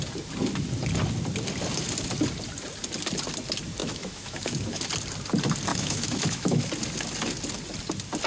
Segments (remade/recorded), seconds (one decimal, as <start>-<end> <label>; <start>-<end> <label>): 0.0-3.8 recorded; 3.8-4.8 remade; 4.8-5.7 recorded; 5.7-6.7 remade; 6.7-8.3 recorded